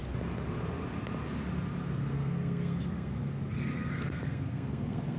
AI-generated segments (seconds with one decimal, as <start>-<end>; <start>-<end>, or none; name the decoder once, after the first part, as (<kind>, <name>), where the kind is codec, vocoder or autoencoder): 2.1-5.2 (codec, SNAC)